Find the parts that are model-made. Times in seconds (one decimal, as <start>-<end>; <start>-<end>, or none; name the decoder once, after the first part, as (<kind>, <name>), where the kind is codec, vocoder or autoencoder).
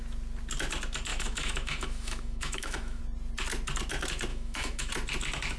1.1-3.0 (autoencoder, DAC-VAE); 4.3-4.9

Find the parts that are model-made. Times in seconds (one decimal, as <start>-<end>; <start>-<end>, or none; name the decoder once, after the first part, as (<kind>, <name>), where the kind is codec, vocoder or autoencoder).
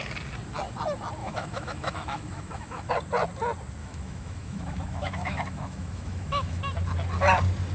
1.2-2.9 (autoencoder, DAC-VAE); 3.8-6.6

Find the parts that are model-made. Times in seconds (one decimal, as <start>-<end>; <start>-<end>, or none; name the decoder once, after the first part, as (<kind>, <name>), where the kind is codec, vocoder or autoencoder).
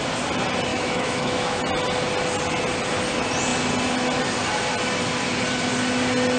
0.7-1.6 (autoencoder, DAC-VAE)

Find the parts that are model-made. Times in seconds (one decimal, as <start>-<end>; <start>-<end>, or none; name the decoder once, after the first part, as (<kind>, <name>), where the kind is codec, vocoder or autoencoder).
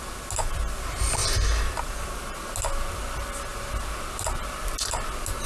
none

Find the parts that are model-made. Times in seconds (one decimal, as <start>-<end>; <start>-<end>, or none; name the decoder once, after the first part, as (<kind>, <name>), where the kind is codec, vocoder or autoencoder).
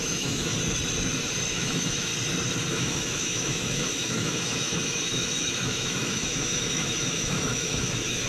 0.0-0.5 (autoencoder, DAC-VAE); 1.5-2.1; 2.7-8.3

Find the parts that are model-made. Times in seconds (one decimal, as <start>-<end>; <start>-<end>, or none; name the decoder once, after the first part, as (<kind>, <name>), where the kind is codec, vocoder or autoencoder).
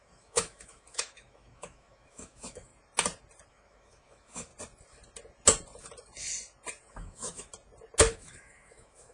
0.0-2.7 (autoencoder, DAC-VAE); 3.5-4.5; 6.9-7.5; 8.1-9.1